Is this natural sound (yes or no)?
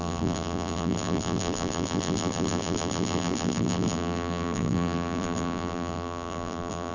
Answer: no